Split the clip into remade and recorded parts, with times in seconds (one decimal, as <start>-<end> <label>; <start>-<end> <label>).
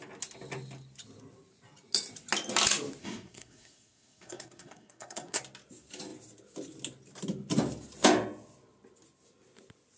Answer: 0.0-3.0 recorded; 3.0-5.4 remade; 5.4-10.0 recorded